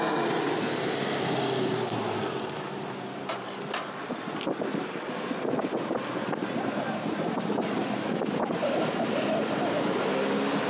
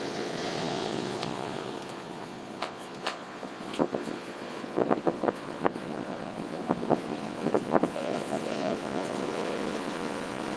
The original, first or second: first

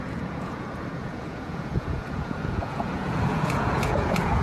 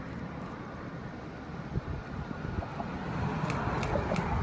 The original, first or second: second